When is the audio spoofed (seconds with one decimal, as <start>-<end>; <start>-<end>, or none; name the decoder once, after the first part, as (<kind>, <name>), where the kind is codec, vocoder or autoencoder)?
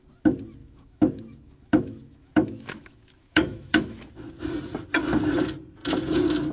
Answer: 0.6-4.1 (autoencoder, DAC-VAE)